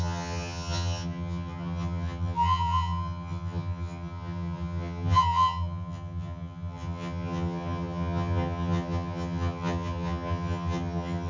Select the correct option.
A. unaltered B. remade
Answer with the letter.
B